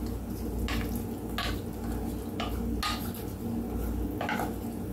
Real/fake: real